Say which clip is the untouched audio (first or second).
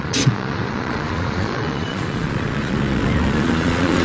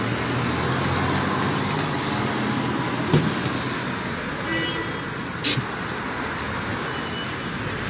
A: second